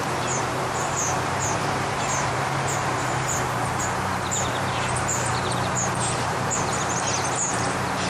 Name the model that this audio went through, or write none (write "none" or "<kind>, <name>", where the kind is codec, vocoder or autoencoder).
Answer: vocoder, BigVGAN v2